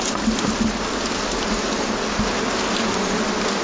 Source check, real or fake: real